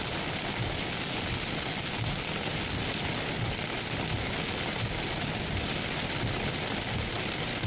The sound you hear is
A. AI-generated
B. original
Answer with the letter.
B